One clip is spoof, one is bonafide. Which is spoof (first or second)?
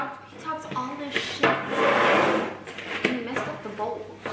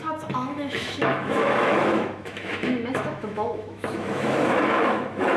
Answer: second